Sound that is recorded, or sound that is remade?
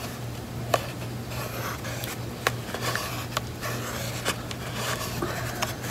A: recorded